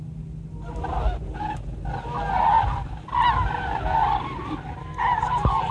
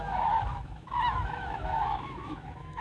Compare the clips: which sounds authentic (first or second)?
first